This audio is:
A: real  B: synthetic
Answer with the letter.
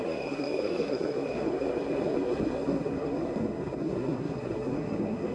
B